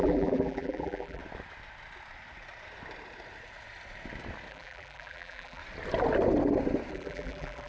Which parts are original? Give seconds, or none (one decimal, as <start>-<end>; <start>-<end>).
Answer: 1.2-4.5; 5.6-6.9